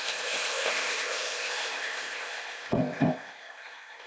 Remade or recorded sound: remade